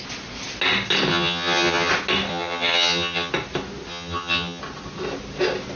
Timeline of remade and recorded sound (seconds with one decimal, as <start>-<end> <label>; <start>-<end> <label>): 0.0-1.1 recorded; 1.1-1.9 remade; 1.9-2.3 recorded; 2.3-3.3 remade; 3.3-3.9 recorded; 3.9-4.6 remade; 4.6-5.8 recorded